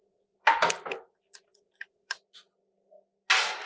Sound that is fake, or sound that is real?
real